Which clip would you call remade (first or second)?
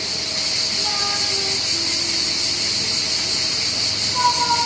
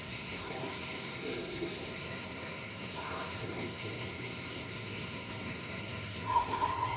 second